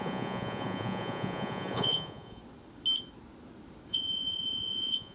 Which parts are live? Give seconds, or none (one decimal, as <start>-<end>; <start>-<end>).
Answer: 2.4-3.9